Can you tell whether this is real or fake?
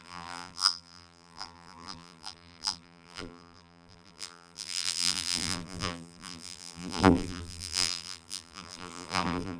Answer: fake